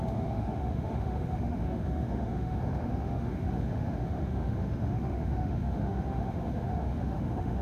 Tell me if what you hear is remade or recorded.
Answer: remade